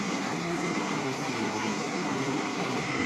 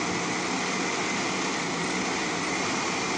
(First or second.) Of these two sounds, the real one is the second